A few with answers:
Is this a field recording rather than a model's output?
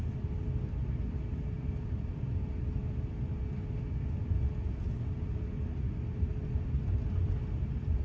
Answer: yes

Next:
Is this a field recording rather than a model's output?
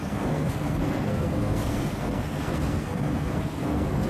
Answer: no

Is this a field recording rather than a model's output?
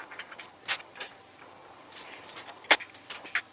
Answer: yes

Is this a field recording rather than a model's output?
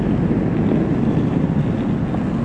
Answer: yes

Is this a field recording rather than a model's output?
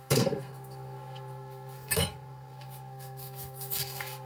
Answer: no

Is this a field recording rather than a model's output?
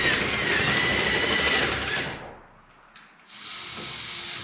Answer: yes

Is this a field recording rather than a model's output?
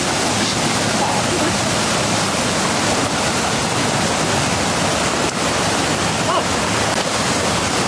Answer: yes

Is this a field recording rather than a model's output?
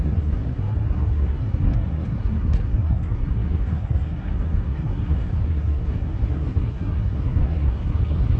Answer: no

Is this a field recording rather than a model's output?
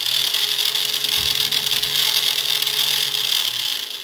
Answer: yes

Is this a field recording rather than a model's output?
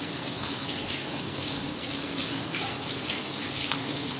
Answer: no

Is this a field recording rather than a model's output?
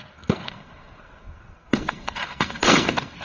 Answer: no